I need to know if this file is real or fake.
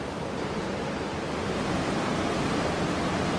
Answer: real